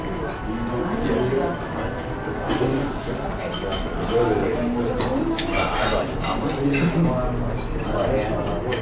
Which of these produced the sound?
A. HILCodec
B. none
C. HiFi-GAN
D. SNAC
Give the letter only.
B